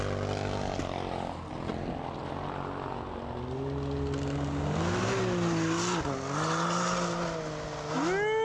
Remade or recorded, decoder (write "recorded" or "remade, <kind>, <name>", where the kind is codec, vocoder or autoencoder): recorded